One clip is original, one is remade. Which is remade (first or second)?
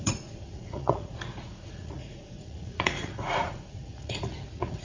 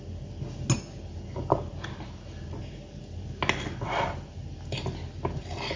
first